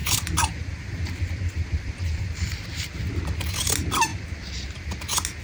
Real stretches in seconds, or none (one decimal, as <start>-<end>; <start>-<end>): 3.2-4.1; 4.8-5.4